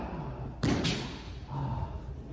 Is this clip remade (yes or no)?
no